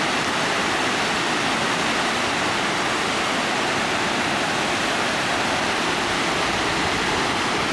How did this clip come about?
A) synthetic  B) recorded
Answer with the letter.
B